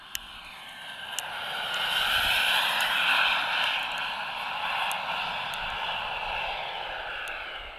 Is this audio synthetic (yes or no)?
no